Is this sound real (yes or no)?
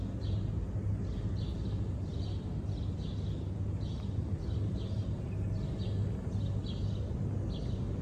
yes